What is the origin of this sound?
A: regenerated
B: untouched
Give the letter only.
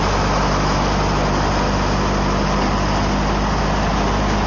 B